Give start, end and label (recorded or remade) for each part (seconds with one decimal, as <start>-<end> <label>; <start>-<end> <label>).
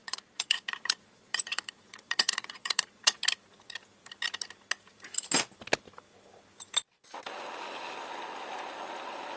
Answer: 0.0-3.2 remade; 3.2-9.4 recorded